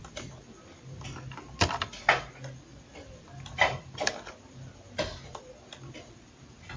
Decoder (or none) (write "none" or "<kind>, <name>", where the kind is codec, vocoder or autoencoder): none